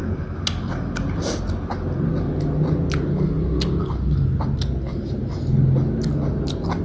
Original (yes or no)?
yes